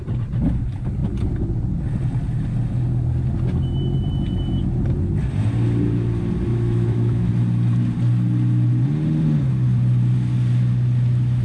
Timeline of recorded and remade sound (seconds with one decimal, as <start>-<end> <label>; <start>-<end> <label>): 0.0-6.5 recorded; 6.5-7.3 remade; 7.3-11.4 recorded